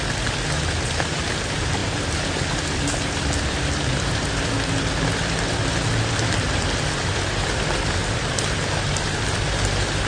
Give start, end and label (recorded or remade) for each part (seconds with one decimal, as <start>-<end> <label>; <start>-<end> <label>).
0.0-10.1 recorded